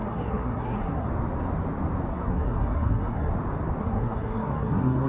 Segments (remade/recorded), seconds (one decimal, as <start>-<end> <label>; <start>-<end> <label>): 0.0-1.1 remade; 1.1-2.1 recorded; 2.1-3.3 remade; 3.3-3.8 recorded; 3.8-5.1 remade